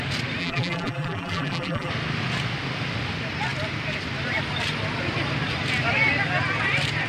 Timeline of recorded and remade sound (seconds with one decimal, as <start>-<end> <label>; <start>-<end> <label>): 0.0-0.4 recorded; 0.4-1.9 remade; 1.9-7.1 recorded